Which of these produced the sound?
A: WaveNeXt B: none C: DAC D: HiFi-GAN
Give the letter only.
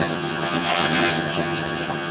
D